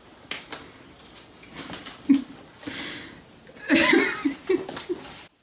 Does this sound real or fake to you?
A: real